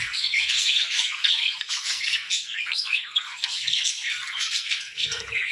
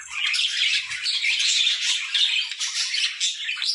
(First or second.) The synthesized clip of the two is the first